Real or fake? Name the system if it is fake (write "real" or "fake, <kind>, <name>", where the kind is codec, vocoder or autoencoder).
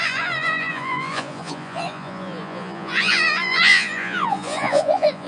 fake, vocoder, Vocos